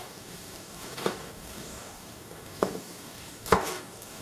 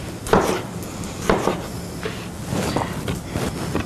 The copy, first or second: first